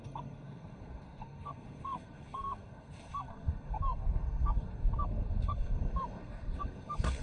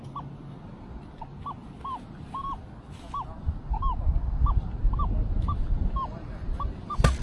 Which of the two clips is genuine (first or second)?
second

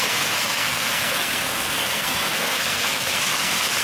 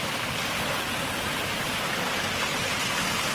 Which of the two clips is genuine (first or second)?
second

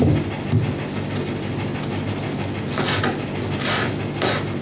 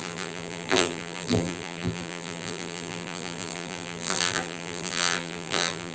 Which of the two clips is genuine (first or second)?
first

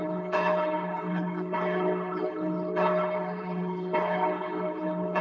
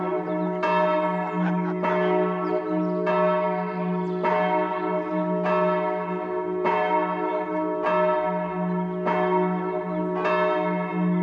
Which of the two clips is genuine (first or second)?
second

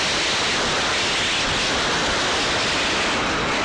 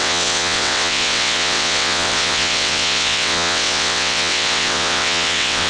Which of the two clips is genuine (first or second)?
first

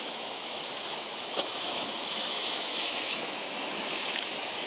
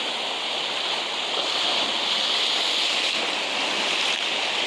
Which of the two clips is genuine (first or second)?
second